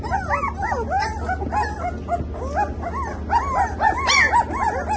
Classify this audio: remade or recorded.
recorded